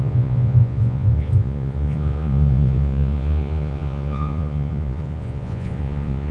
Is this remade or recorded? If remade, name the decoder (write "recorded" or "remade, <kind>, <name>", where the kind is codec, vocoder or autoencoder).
remade, vocoder, Vocos